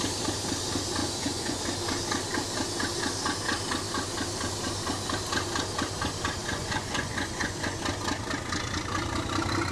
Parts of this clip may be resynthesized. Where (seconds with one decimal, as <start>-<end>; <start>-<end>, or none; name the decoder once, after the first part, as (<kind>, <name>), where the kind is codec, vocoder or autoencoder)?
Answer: 1.0-1.6 (vocoder, Vocos); 6.4-7.8

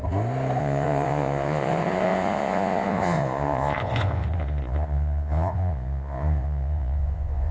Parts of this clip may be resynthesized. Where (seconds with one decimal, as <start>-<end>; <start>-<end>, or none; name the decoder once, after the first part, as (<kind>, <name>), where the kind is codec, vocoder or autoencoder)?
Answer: 0.6-7.5 (vocoder, Vocos)

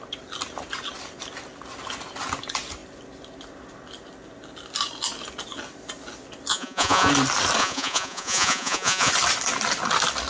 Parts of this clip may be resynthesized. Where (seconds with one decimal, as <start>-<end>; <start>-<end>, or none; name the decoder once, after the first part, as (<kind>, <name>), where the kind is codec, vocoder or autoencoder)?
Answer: 6.5-7.1 (vocoder, Vocos); 7.6-9.1

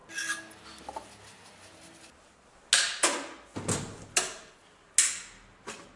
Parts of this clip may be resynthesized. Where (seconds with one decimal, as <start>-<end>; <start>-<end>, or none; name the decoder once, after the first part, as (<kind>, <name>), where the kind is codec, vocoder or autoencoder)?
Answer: none

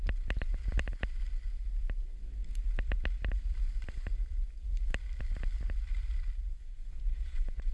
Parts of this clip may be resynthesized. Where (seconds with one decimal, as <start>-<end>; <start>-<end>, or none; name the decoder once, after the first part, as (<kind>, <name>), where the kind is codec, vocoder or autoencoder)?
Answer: 6.5-7.7 (vocoder, Vocos)

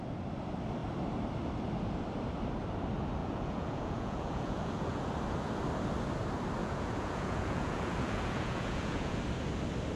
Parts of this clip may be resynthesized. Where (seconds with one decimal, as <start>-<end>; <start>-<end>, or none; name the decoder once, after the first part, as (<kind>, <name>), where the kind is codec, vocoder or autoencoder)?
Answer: 3.2-5.1 (vocoder, Vocos); 6.6-9.2